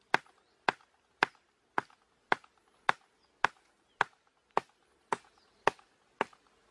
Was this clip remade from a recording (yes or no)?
no